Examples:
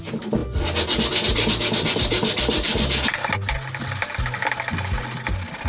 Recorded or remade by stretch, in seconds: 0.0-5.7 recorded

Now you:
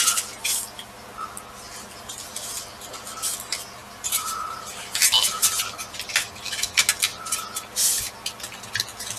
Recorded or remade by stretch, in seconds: 0.0-3.8 recorded; 3.8-4.6 remade; 4.6-9.2 recorded

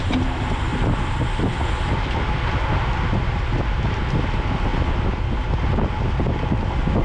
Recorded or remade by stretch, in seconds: 0.0-7.0 recorded

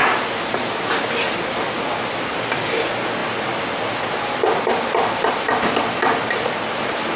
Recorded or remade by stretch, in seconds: 0.0-3.2 recorded; 3.2-5.3 remade; 5.3-7.2 recorded

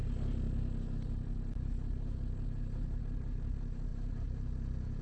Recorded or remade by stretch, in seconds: 0.0-3.9 recorded; 3.9-5.0 remade

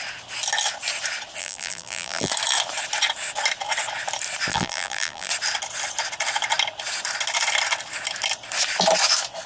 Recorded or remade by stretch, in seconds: 0.0-1.4 recorded; 1.4-2.3 remade; 2.3-4.5 recorded; 4.5-5.3 remade; 5.3-9.5 recorded

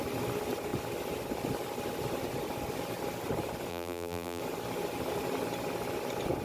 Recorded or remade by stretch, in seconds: 0.0-3.7 recorded; 3.7-4.4 remade; 4.4-6.4 recorded

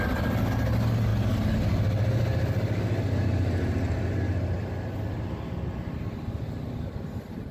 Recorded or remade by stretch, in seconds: 0.0-7.5 recorded